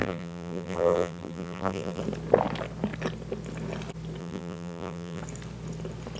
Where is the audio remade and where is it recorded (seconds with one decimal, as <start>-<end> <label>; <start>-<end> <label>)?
0.0-2.0 remade; 2.0-4.2 recorded; 4.2-5.2 remade; 5.2-6.2 recorded